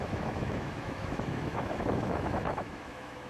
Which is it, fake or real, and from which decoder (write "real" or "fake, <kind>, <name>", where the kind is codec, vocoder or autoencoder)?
fake, autoencoder, DAC-VAE